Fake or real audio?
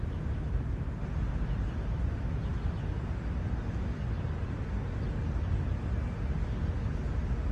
real